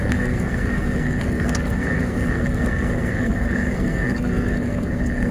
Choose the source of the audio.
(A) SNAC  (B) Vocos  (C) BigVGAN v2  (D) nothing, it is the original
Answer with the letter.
A